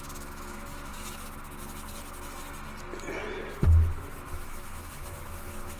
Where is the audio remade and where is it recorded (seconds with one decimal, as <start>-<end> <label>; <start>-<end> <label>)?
0.0-0.9 remade; 0.9-4.3 recorded; 4.3-5.8 remade